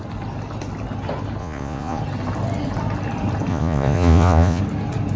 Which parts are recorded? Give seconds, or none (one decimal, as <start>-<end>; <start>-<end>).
0.0-1.4; 2.0-3.5; 4.6-5.2